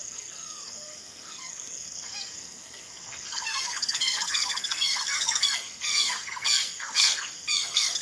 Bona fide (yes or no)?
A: no